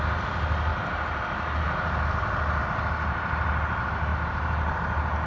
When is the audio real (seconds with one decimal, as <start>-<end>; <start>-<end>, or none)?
0.0-5.3